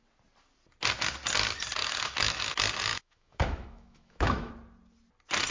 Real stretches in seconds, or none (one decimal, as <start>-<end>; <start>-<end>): 0.0-1.8; 2.5-2.9; 4.5-5.5